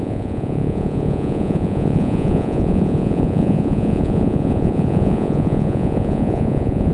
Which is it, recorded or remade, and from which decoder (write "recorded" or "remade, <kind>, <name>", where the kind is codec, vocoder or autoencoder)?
remade, vocoder, Vocos